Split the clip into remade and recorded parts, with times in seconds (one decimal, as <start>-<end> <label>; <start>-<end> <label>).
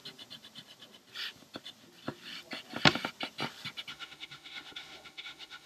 0.0-3.9 recorded; 3.9-5.7 remade